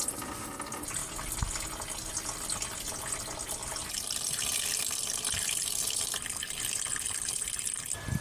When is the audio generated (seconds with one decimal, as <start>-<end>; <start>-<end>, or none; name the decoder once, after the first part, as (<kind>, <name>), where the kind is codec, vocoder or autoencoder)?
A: 3.6-8.2 (vocoder, BigVGAN v2)